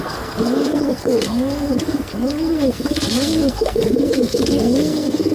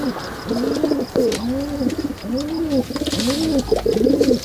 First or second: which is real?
second